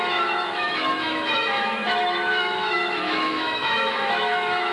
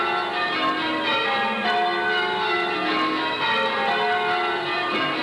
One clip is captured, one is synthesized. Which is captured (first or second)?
second